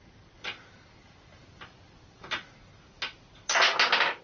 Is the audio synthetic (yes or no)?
no